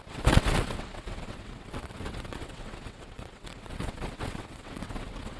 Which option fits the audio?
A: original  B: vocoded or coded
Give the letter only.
B